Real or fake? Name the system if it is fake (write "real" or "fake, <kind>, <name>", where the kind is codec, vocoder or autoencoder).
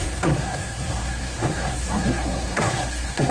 fake, codec, SNAC